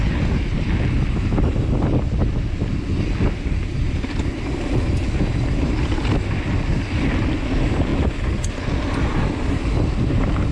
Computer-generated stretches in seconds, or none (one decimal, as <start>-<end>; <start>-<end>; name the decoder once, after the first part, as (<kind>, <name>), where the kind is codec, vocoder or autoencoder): none

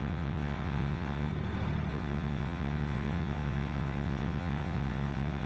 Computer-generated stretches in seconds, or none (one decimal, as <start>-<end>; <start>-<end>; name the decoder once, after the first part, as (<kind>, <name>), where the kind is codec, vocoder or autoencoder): 0.0-1.3 (vocoder, WaveNeXt); 1.9-5.5

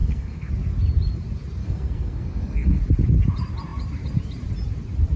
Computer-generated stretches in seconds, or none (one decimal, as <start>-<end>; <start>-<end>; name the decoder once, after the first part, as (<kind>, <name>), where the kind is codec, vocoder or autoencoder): 0.0-0.5 (codec, SNAC); 1.6-2.8

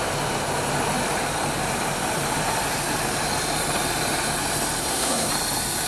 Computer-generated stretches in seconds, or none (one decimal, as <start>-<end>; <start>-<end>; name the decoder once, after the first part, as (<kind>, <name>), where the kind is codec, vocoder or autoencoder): 4.8-5.3 (codec, SNAC)